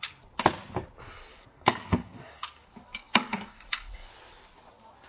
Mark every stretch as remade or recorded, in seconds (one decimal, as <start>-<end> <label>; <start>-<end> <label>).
0.0-1.3 recorded; 1.3-4.1 remade; 4.1-5.1 recorded